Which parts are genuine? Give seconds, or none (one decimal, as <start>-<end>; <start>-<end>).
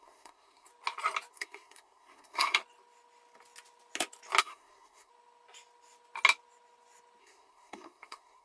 0.7-1.3; 2.6-4.4; 5.1-7.2